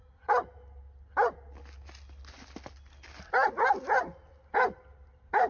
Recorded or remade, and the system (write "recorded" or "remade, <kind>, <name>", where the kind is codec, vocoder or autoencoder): recorded